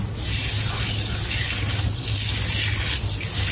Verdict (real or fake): real